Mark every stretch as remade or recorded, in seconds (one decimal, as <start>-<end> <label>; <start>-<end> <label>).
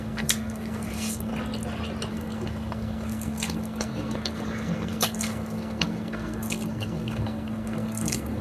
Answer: 0.0-1.3 remade; 1.3-2.1 recorded; 2.1-8.4 remade